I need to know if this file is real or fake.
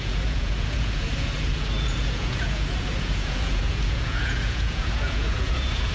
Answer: fake